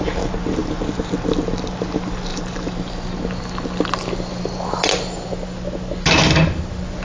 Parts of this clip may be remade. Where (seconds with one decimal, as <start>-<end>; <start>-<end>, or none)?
0.6-1.1; 2.3-2.9